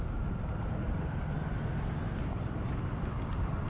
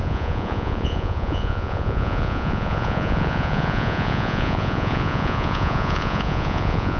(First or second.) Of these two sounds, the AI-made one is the second